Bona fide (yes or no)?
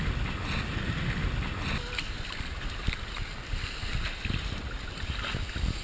yes